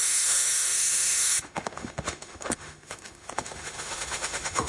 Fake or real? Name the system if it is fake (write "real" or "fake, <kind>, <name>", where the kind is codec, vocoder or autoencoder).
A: fake, autoencoder, DAC-VAE